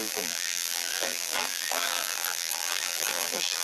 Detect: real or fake fake